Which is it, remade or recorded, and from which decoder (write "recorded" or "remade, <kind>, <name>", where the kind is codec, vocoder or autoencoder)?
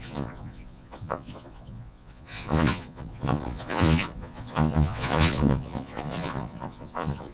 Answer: remade, vocoder, Vocos